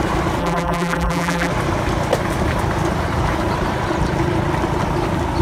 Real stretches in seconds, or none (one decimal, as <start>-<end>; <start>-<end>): 0.0-0.4; 1.5-5.4